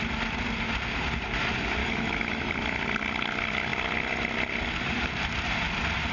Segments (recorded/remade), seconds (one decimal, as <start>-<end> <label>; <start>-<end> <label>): 0.0-1.8 recorded; 1.8-2.5 remade; 2.5-6.1 recorded